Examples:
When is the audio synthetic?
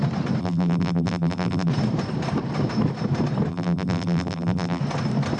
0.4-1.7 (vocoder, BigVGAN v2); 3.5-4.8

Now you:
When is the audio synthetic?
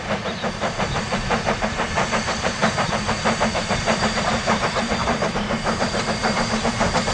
0.0-7.1 (vocoder, BigVGAN v2)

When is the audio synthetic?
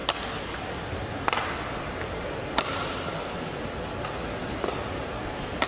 4.4-5.2 (vocoder, BigVGAN v2)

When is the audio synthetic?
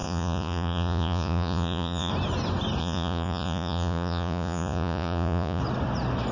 0.0-2.1 (vocoder, Vocos); 2.8-5.6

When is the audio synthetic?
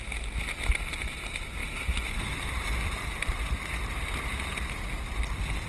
none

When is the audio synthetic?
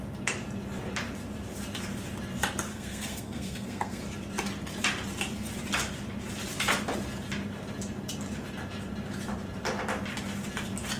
2.7-4.0 (codec, SNAC)